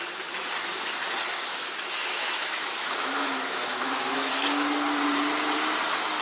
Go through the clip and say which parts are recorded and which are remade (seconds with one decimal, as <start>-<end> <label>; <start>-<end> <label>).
0.0-1.5 recorded; 1.5-4.3 remade; 4.3-6.2 recorded